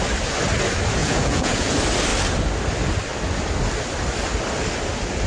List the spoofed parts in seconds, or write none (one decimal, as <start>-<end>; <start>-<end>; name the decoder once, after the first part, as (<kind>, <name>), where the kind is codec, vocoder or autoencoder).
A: 1.0-1.7 (vocoder, Vocos)